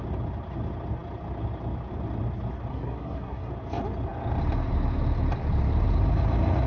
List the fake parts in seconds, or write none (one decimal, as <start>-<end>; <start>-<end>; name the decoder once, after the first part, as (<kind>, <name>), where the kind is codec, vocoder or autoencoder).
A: 2.7-3.5 (codec, SNAC)